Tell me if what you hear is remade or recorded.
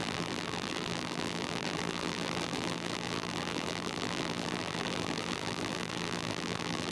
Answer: remade